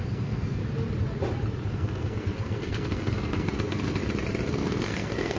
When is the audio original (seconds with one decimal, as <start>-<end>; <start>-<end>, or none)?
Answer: 0.6-1.7; 4.0-4.5